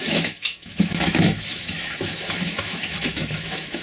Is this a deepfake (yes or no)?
yes